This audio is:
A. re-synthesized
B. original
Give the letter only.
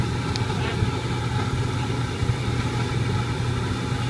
B